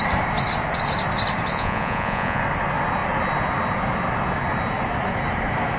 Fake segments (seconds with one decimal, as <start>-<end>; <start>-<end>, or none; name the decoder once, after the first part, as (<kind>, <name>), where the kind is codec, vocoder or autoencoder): 1.5-2.4 (vocoder, Vocos)